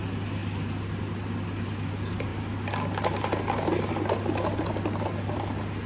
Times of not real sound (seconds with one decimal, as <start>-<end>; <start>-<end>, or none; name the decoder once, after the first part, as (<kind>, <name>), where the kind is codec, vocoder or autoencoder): none